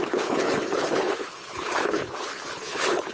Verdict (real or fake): fake